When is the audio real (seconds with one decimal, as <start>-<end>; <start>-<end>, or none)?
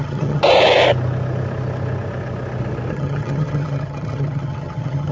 0.4-2.9